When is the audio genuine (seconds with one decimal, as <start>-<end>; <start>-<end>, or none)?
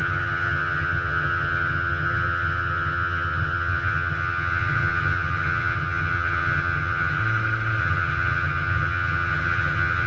7.2-7.8